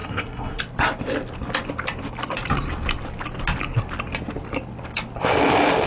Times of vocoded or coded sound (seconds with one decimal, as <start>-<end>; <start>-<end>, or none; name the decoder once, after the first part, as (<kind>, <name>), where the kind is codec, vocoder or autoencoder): 0.0-0.6 (codec, SNAC)